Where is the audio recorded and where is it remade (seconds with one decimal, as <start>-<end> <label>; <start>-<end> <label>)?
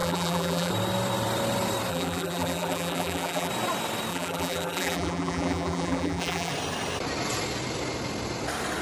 0.0-0.7 remade; 0.7-1.9 recorded; 1.9-3.5 remade; 3.5-4.1 recorded; 4.1-6.5 remade; 6.5-8.8 recorded